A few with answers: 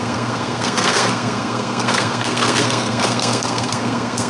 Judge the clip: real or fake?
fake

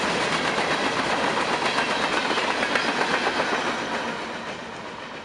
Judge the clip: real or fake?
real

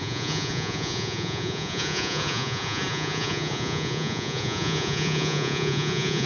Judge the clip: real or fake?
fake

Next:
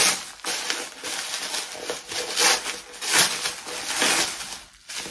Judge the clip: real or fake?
real